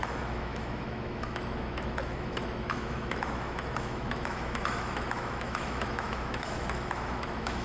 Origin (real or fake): fake